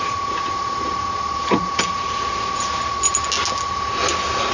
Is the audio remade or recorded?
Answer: recorded